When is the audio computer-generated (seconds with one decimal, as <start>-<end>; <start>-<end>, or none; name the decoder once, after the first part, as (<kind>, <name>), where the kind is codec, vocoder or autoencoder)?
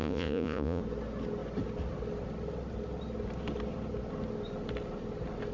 0.0-0.8 (vocoder, Vocos)